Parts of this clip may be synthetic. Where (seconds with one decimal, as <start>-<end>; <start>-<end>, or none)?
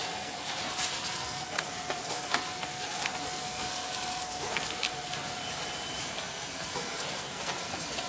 0.0-5.4; 6.0-8.1